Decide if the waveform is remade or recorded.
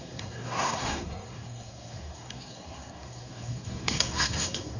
remade